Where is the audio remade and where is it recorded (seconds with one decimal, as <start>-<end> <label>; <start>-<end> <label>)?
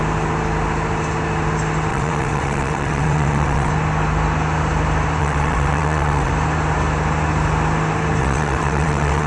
0.0-1.9 recorded; 1.9-3.7 remade; 3.7-5.2 recorded; 5.2-6.3 remade; 6.3-8.2 recorded; 8.2-9.3 remade